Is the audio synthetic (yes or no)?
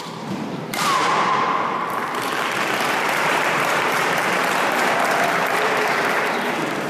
yes